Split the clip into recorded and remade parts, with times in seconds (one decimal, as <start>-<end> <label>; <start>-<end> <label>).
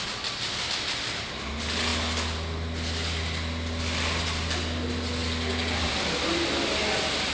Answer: 0.0-7.3 recorded